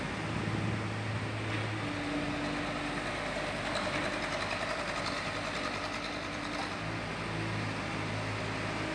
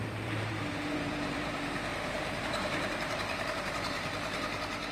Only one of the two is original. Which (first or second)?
first